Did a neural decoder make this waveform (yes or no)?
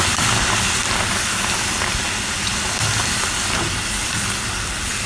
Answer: no